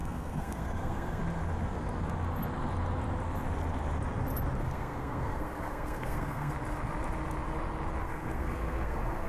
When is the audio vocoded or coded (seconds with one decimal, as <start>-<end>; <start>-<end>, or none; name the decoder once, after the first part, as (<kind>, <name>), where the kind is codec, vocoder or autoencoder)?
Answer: 0.0-1.2 (codec, SNAC); 4.6-6.5; 8.0-9.3